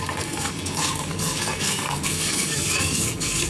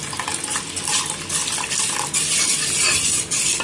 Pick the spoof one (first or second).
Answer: first